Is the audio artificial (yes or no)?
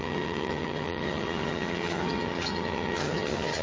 yes